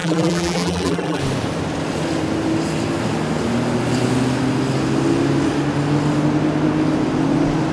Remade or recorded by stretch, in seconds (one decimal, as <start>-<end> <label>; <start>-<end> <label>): 0.0-1.2 remade; 1.2-7.7 recorded

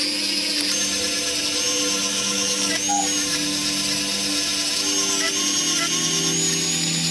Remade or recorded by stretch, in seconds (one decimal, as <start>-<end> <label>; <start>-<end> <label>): 0.0-2.1 recorded; 2.1-2.7 remade; 2.7-7.1 recorded

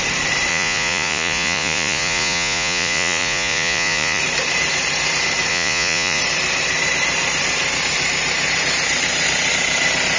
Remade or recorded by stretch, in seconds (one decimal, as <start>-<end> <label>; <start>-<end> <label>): 0.0-0.5 recorded; 0.5-4.2 remade; 4.2-5.5 recorded; 5.5-6.2 remade; 6.2-10.2 recorded

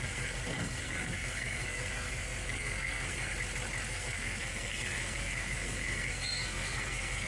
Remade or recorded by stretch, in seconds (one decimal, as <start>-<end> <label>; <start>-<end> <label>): 0.0-3.3 remade; 3.3-3.9 recorded; 3.9-7.3 remade

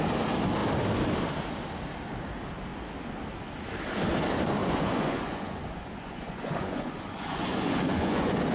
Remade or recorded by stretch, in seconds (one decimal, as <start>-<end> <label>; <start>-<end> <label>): 0.0-4.6 recorded; 4.6-8.5 remade